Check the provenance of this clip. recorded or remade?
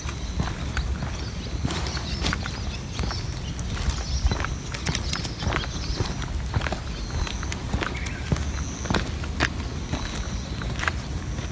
recorded